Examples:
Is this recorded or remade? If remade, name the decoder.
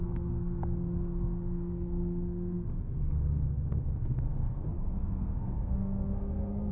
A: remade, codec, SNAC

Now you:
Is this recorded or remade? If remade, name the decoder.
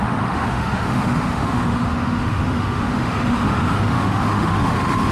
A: remade, autoencoder, DAC-VAE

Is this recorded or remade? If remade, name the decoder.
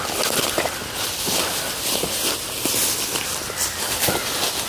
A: recorded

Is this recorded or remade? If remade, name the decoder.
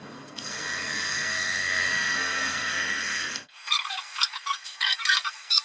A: remade, codec, SNAC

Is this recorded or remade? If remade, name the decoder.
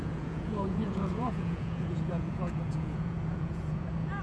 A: remade, vocoder, Vocos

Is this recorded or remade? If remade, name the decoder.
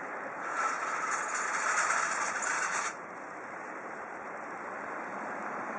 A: remade, vocoder, BigVGAN v2